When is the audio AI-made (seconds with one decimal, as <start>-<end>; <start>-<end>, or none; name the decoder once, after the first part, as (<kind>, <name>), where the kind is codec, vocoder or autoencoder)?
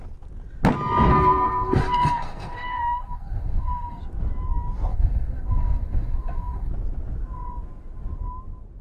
1.1-4.0 (codec, SNAC); 4.9-6.7